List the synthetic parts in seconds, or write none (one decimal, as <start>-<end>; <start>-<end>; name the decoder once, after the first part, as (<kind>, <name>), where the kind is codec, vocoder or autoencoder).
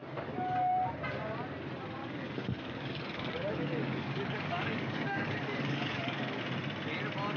0.0-0.7 (codec, DAC); 2.0-6.4